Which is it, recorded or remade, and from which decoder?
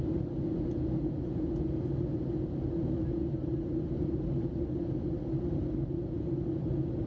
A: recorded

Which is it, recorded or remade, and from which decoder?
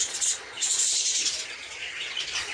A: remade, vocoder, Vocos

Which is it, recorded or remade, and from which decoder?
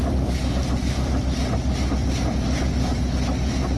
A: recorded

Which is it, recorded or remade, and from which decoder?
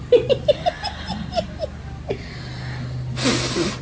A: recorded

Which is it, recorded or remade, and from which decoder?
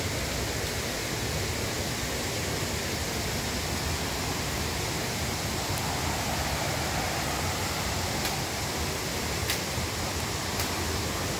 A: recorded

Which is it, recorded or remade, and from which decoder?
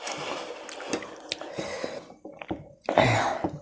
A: recorded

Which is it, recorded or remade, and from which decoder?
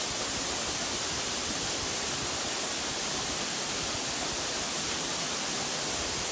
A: recorded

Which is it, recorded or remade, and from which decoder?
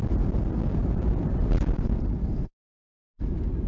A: recorded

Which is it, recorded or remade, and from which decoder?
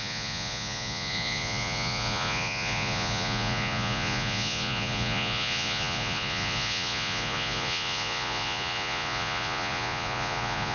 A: remade, vocoder, Vocos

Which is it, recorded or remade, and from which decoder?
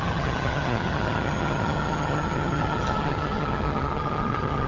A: remade, vocoder, HiFi-GAN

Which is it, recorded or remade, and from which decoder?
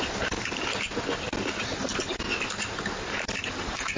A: recorded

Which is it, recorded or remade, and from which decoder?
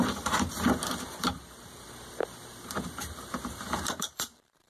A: remade, vocoder, BigVGAN v2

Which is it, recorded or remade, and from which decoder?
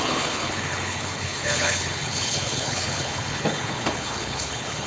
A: remade, codec, HILCodec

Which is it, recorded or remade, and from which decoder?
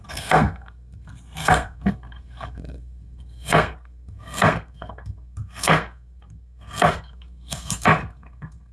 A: remade, codec, SNAC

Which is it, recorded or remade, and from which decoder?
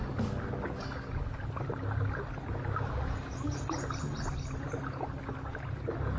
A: recorded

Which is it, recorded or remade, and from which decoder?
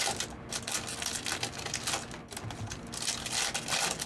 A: recorded